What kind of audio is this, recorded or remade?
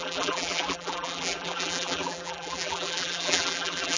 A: remade